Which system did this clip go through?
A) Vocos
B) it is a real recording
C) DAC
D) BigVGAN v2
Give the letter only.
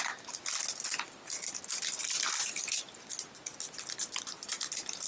B